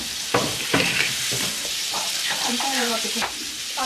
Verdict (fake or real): fake